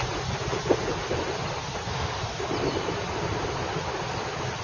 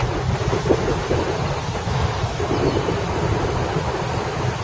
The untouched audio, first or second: second